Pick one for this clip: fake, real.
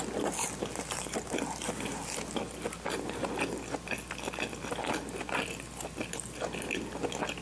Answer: real